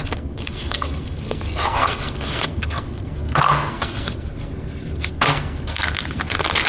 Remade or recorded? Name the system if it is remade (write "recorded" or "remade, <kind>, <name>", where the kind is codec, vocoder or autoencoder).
remade, codec, SNAC